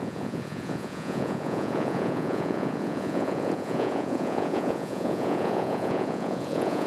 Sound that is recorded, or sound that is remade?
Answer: remade